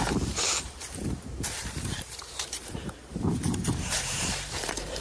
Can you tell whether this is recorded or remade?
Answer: remade